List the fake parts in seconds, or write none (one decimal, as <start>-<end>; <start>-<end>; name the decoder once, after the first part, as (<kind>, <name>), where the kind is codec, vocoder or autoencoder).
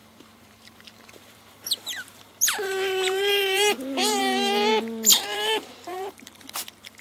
0.0-4.2 (vocoder, BigVGAN v2); 5.1-6.5